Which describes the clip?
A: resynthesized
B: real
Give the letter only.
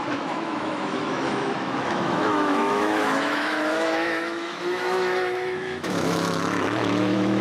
A